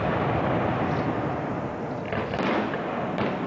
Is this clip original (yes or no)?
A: yes